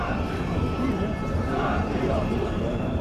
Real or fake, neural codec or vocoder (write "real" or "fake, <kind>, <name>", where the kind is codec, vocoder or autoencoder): fake, vocoder, BigVGAN v2